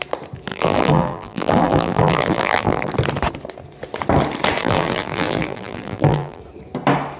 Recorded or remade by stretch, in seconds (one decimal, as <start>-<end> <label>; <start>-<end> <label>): 0.0-0.5 recorded; 0.5-2.9 remade; 2.9-4.6 recorded; 4.6-6.4 remade; 6.4-7.2 recorded